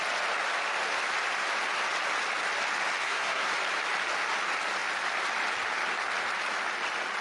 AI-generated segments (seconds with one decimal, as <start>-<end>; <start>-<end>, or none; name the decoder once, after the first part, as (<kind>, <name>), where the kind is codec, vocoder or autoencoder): 3.0-3.5 (codec, SNAC)